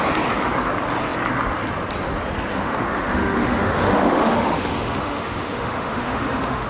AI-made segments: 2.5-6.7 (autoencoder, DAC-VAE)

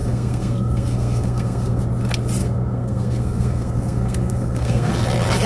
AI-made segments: 0.0-1.8 (codec, SNAC); 2.4-4.9

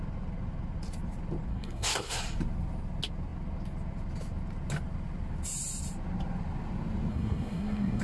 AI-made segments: 1.5-2.2 (codec, SNAC); 7.1-8.0

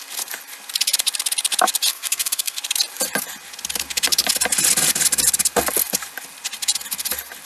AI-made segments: 1.9-2.6 (codec, SNAC)